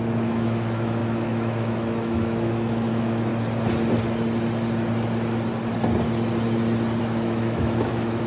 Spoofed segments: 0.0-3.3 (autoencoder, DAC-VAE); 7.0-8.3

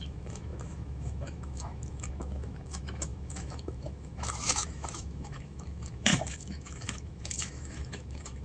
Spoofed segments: 0.0-8.4 (autoencoder, DAC-VAE)

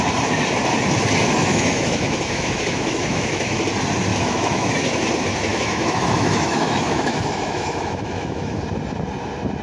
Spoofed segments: 1.4-3.6 (autoencoder, DAC-VAE); 4.1-4.7; 5.5-8.6